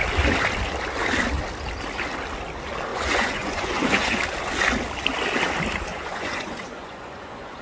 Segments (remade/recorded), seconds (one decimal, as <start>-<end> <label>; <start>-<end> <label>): 0.0-2.9 recorded; 2.9-4.2 remade; 4.2-5.9 recorded; 5.9-7.6 remade